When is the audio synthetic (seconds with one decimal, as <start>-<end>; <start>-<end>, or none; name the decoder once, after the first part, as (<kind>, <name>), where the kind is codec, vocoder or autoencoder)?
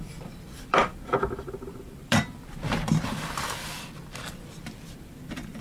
0.0-5.6 (vocoder, BigVGAN v2)